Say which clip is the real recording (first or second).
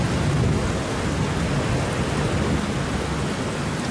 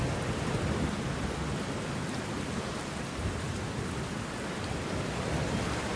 first